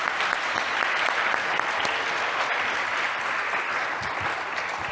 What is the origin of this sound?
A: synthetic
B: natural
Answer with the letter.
B